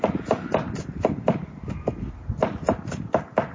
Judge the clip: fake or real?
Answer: real